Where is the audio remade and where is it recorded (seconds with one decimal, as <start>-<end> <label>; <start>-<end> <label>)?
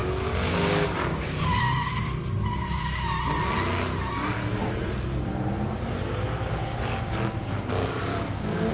0.0-1.9 remade; 1.9-8.1 recorded; 8.1-8.7 remade